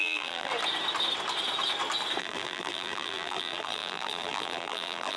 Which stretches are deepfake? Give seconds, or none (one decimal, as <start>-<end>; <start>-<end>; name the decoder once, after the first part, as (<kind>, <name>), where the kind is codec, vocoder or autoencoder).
0.0-0.5 (vocoder, BigVGAN v2); 2.2-5.2